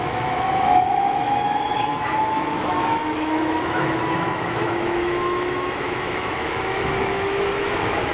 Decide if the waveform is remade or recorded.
remade